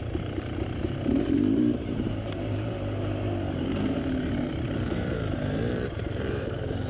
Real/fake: fake